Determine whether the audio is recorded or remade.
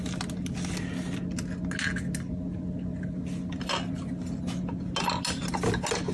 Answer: recorded